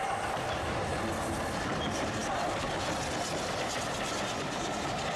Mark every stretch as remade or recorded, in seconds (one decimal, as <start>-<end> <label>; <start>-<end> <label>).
0.0-5.2 recorded